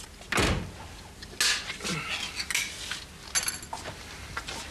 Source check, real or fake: real